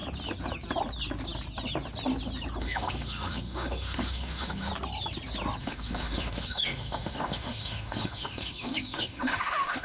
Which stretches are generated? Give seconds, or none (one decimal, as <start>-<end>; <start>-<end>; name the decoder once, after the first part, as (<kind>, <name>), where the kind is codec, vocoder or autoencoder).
2.6-4.7 (autoencoder, DAC-VAE); 5.6-9.8